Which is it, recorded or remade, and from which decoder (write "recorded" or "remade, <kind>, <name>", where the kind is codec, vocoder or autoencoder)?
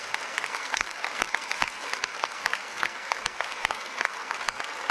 remade, codec, SNAC